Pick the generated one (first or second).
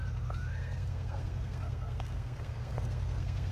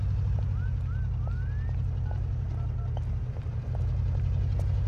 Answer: first